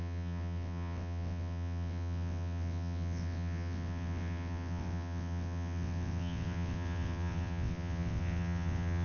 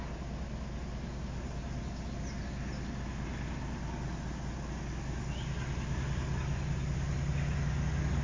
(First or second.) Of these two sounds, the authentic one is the second